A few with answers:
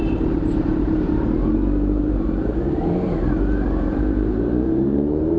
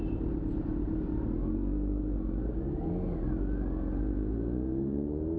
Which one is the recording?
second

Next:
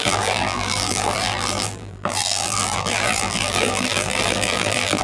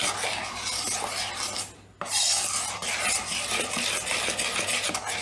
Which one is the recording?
second